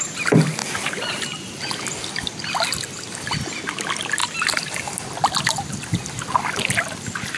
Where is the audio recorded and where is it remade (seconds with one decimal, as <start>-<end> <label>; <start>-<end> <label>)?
0.0-7.4 recorded